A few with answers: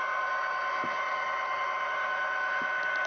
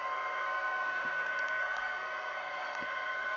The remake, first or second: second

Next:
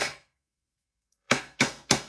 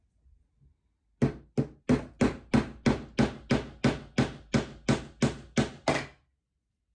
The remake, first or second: first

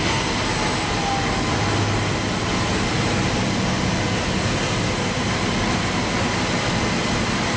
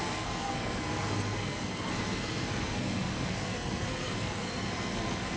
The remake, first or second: second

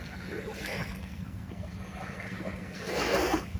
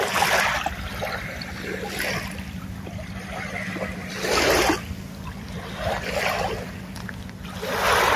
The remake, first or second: first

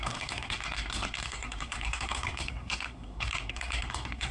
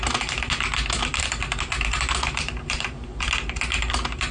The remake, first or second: first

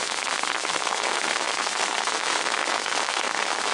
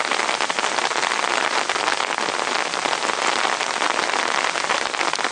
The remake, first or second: first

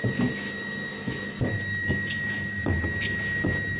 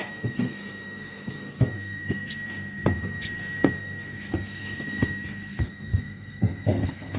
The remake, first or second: second